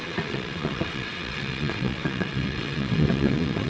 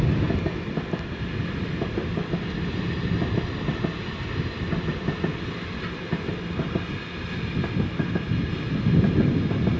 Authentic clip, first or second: second